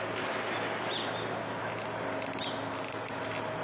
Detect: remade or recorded recorded